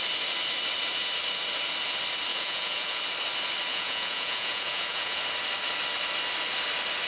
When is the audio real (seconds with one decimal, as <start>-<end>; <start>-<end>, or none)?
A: 0.0-2.3; 3.0-3.7; 5.2-7.1